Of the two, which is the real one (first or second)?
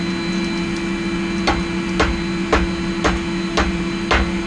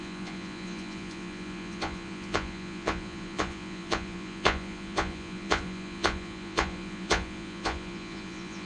first